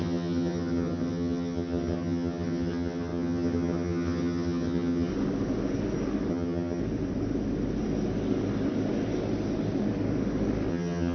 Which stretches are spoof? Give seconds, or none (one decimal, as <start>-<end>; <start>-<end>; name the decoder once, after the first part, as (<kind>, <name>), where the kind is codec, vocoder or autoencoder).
0.0-5.1 (vocoder, HiFi-GAN); 6.3-6.8; 10.7-11.1

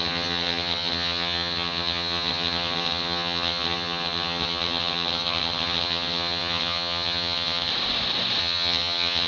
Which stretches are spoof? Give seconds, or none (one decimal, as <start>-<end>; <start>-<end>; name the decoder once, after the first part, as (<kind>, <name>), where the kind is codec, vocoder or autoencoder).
0.0-7.7 (vocoder, HiFi-GAN); 8.4-9.3

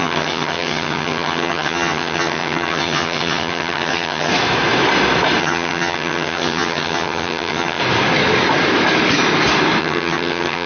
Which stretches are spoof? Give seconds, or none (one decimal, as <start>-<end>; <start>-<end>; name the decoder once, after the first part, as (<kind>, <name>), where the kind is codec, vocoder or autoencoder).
0.0-4.3 (vocoder, HiFi-GAN); 5.4-7.8; 9.8-10.7

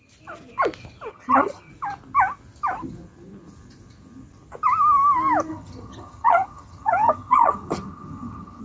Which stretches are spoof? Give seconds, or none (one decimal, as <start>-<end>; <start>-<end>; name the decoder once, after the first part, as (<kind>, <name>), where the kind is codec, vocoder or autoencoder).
1.1-1.7 (vocoder, HiFi-GAN); 5.5-8.6